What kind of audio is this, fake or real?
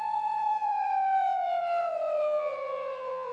fake